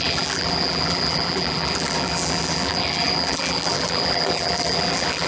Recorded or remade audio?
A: remade